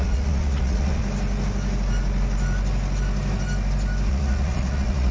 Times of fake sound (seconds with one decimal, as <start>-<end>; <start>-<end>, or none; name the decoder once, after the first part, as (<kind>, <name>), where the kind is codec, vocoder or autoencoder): 0.0-1.0 (vocoder, Vocos); 4.1-5.1